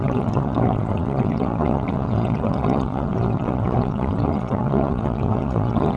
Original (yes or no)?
no